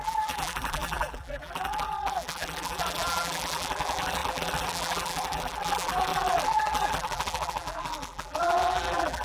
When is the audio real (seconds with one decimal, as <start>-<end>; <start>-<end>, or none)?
none